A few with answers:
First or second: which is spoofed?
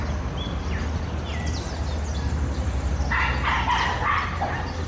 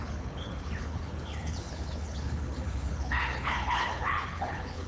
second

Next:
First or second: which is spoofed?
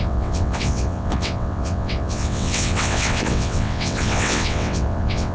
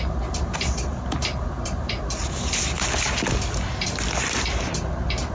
first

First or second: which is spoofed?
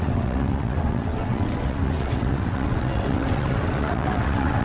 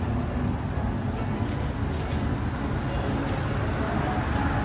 first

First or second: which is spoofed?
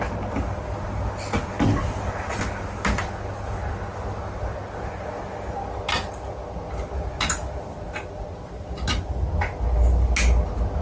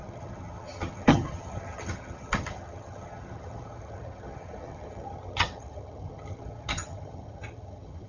second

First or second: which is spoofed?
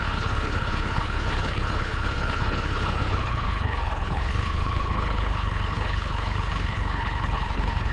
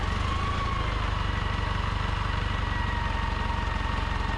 first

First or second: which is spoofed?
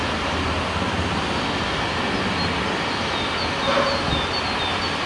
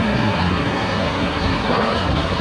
second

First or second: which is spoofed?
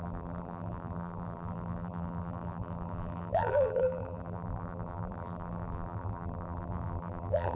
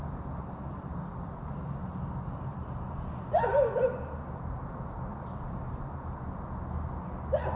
first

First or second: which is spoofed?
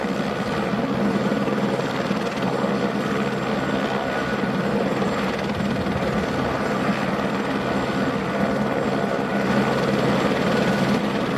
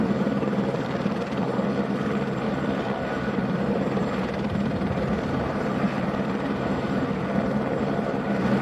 second